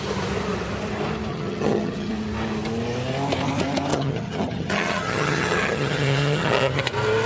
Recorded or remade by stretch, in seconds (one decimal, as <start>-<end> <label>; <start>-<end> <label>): 0.0-1.3 recorded; 1.3-2.1 remade; 2.1-3.9 recorded; 3.9-6.8 remade; 6.8-7.3 recorded